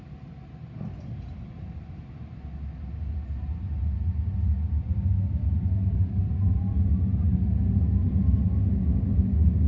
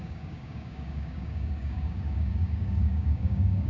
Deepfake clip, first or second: second